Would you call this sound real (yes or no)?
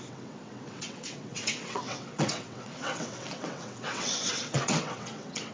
no